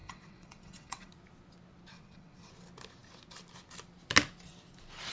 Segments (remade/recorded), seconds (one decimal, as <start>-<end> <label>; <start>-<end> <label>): 0.0-1.1 remade; 1.1-1.9 recorded; 1.9-2.5 remade; 2.5-5.1 recorded